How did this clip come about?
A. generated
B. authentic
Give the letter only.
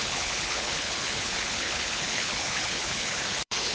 A